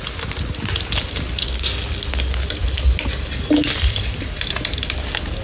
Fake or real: real